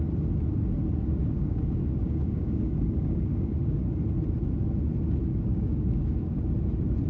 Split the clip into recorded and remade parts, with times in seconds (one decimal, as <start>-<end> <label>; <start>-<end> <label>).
0.0-1.2 recorded; 1.2-3.8 remade; 3.8-5.3 recorded; 5.3-6.4 remade; 6.4-7.1 recorded